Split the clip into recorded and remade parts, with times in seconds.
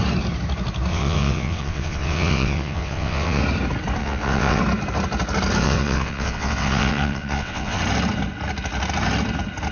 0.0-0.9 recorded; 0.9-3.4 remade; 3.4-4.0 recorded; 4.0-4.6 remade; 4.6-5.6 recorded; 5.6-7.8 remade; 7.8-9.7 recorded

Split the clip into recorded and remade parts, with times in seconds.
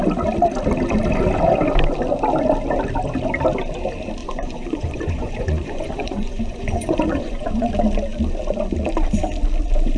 0.0-4.2 recorded; 4.2-7.7 remade; 7.7-10.0 recorded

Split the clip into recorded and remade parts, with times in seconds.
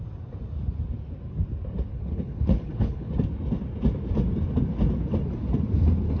0.0-1.9 recorded; 1.9-3.1 remade; 3.1-6.2 recorded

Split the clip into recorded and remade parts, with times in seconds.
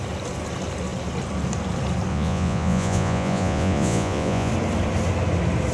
0.0-2.1 recorded; 2.1-4.5 remade; 4.5-5.7 recorded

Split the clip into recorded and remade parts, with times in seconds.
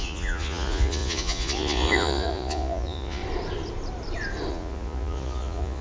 0.0-3.2 remade; 3.2-4.5 recorded; 4.5-5.8 remade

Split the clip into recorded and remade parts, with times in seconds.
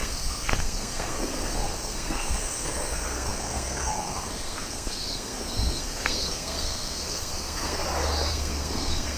0.0-7.8 remade; 7.8-8.3 recorded; 8.3-9.2 remade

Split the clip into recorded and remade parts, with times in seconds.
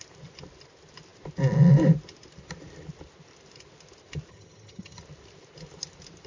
0.0-4.3 recorded; 4.3-5.0 remade; 5.0-6.3 recorded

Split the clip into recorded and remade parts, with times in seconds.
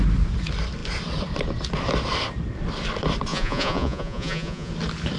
0.0-3.3 recorded; 3.3-4.7 remade; 4.7-5.2 recorded